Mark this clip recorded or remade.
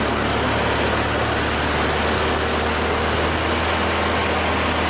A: recorded